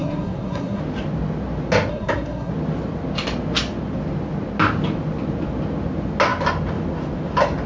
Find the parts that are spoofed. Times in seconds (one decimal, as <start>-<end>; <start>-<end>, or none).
0.0-0.8; 1.9-2.5